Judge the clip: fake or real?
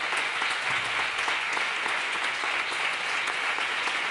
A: fake